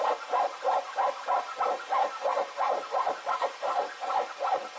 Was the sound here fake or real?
real